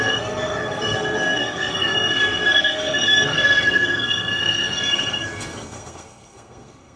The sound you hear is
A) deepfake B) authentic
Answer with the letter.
A